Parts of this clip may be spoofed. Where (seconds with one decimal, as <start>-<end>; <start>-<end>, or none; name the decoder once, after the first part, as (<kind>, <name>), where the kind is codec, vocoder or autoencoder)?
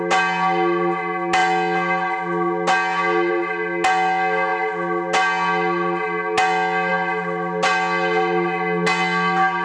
none